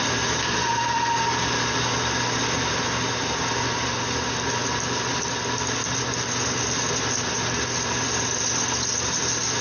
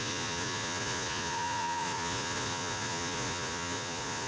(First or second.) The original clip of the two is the first